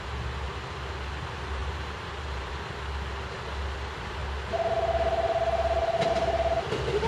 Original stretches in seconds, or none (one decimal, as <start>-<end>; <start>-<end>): 0.0-1.6; 2.5-7.1